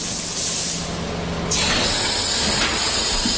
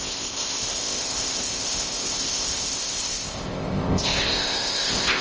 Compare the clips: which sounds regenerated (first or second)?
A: second